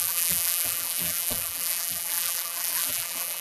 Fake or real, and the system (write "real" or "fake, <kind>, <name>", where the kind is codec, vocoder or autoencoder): fake, vocoder, BigVGAN v2